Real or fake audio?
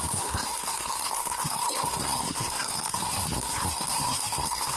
fake